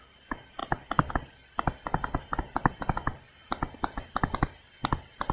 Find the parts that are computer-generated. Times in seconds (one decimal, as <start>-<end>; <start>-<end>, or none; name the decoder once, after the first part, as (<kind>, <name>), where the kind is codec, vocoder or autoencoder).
none